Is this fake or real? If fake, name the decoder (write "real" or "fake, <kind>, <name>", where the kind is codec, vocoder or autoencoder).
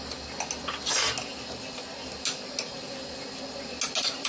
real